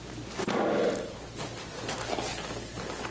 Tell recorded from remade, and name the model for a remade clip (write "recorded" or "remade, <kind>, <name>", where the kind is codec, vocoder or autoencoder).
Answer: recorded